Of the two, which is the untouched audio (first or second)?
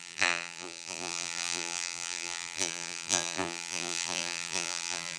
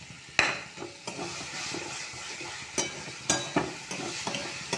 second